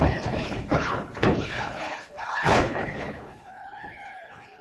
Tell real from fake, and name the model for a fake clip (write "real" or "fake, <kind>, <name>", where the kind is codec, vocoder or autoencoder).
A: fake, codec, HILCodec